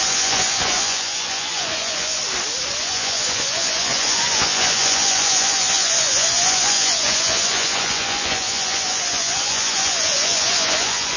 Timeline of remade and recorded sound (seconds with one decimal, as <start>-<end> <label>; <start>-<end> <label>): 0.0-2.2 remade; 2.2-2.8 recorded; 2.8-11.2 remade